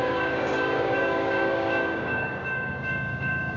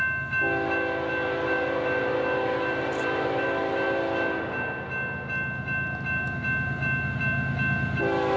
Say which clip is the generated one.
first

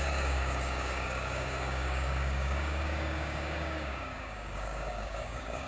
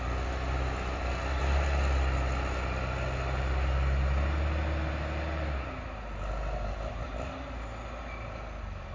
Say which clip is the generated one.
first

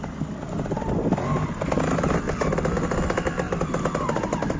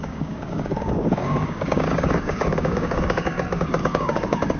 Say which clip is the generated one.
second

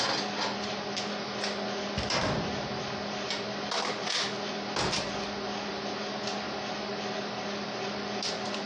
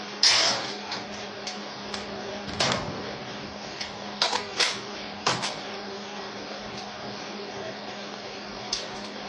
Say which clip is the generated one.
second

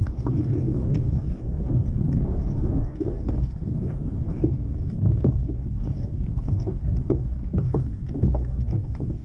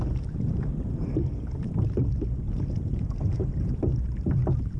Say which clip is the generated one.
first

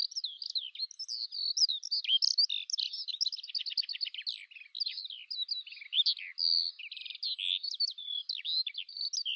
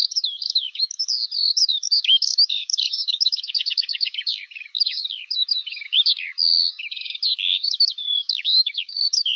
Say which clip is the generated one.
second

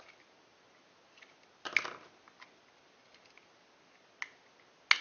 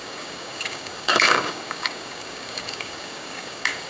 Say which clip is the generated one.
second